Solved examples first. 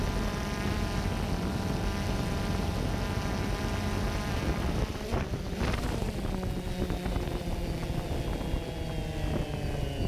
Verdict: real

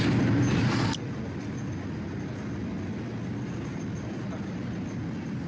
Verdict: real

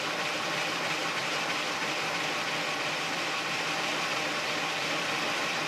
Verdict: real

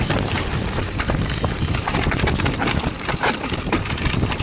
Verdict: fake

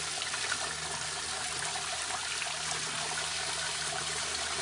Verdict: real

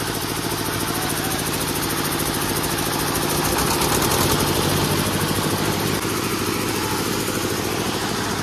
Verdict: real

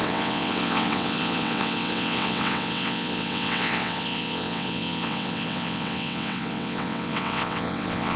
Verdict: fake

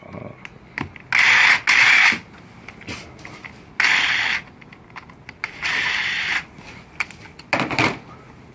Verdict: real